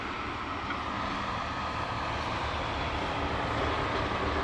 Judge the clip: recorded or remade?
recorded